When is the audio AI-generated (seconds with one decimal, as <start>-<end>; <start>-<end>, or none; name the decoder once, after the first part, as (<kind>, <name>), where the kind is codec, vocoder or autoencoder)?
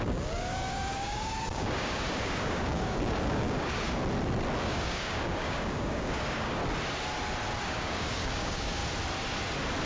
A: 0.0-4.0 (codec, DAC); 4.6-6.6; 7.6-8.8